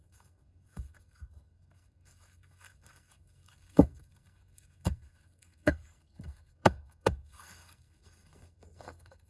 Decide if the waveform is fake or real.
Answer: fake